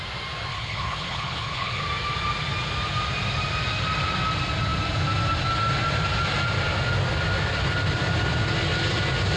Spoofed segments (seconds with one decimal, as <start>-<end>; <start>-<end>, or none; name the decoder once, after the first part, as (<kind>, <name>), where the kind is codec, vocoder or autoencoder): 0.5-1.8 (codec, HILCodec)